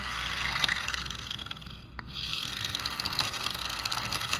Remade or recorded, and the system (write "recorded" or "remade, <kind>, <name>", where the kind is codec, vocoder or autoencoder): remade, codec, SNAC